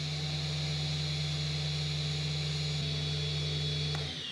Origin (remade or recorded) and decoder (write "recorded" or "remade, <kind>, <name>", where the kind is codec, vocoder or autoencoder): recorded